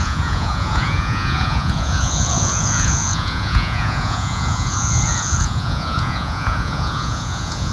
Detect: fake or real fake